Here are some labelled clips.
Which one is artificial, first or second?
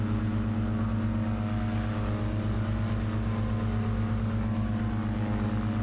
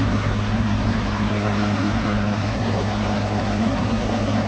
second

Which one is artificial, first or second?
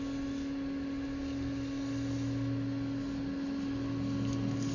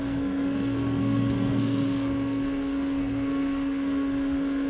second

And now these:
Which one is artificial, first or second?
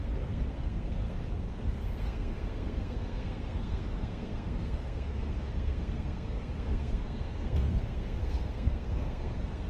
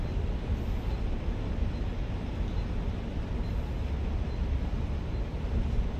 first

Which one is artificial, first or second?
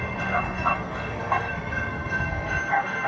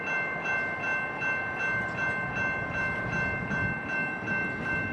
first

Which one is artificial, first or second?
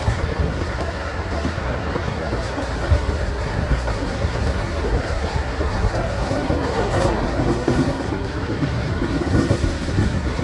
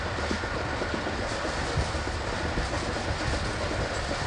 first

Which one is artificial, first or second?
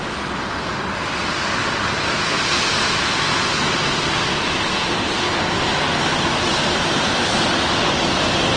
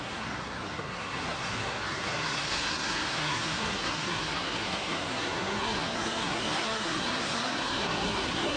second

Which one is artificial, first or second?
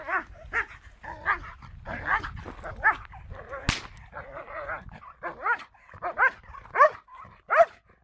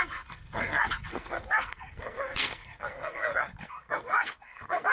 second